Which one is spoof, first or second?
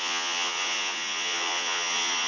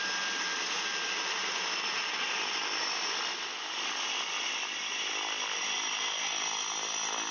first